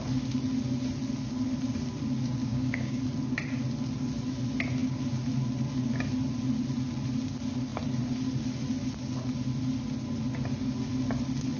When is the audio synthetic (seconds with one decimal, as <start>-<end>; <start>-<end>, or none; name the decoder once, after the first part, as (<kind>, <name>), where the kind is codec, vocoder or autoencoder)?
2.4-3.0 (codec, DAC)